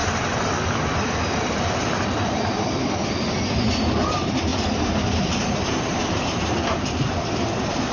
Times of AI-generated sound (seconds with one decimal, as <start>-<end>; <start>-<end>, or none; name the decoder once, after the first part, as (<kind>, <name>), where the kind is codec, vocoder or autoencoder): 0.0-2.9 (vocoder, BigVGAN v2); 4.5-5.3